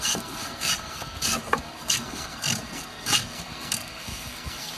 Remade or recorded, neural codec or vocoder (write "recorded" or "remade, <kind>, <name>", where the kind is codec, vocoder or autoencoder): remade, codec, SNAC